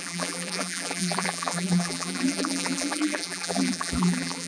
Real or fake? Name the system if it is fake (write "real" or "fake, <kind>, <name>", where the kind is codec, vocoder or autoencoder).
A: fake, vocoder, BigVGAN v2